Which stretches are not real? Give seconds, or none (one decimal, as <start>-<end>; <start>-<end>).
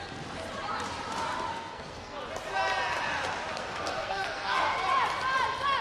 1.5-2.2; 3.5-4.8